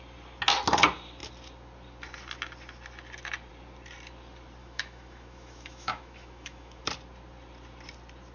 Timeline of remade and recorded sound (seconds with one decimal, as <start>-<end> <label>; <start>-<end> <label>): 0.0-4.6 recorded; 4.6-6.8 remade; 6.8-8.3 recorded